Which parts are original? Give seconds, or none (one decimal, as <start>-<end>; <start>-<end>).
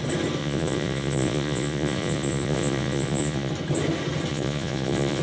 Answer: 0.0-0.4; 3.5-4.3